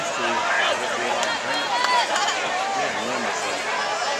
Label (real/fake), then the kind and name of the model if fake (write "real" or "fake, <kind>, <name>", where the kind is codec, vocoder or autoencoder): real